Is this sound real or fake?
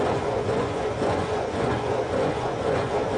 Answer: fake